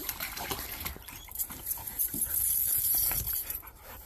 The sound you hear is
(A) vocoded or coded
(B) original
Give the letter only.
A